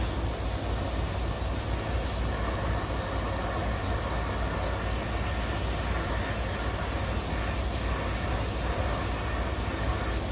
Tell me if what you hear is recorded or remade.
recorded